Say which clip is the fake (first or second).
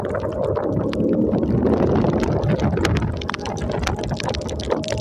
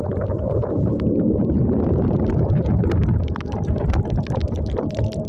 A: second